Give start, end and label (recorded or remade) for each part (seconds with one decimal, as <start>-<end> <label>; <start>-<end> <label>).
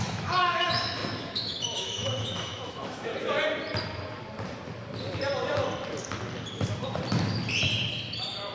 0.0-3.1 remade; 3.1-8.5 recorded